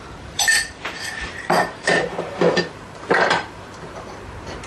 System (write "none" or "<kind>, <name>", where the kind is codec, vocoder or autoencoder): vocoder, BigVGAN v2